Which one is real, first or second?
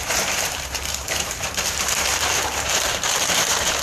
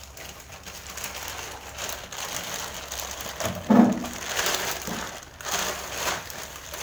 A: second